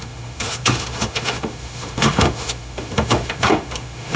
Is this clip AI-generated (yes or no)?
yes